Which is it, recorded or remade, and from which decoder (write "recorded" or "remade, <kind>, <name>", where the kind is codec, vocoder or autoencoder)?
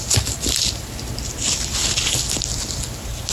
recorded